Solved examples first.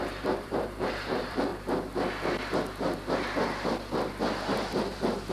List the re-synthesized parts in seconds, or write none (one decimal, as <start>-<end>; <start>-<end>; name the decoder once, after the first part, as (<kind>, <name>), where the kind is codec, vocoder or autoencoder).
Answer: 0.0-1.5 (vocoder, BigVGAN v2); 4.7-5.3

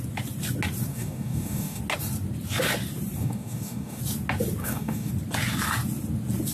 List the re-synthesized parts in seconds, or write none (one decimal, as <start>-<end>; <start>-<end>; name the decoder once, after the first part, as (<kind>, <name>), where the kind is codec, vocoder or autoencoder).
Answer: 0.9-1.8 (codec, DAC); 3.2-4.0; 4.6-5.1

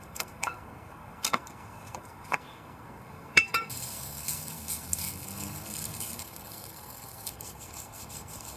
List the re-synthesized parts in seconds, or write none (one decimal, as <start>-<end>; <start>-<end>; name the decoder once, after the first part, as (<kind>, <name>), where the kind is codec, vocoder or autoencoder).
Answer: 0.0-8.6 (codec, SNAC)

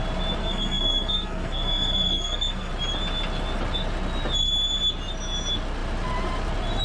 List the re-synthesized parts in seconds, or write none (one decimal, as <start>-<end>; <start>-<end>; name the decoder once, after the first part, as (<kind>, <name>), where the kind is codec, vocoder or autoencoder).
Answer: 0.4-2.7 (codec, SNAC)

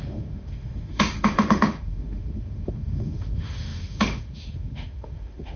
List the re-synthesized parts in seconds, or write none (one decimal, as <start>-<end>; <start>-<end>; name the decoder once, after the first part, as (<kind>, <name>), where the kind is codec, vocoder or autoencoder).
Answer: 0.0-5.6 (autoencoder, DAC-VAE)

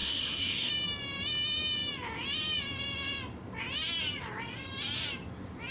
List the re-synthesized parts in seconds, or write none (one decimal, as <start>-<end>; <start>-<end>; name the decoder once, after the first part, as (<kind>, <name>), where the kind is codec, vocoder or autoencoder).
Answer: 0.0-0.7 (codec, SNAC)

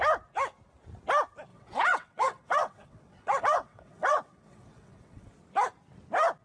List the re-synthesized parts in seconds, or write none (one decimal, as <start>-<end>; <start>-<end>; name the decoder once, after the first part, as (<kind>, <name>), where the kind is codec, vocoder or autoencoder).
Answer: 1.5-5.3 (vocoder, WaveNeXt)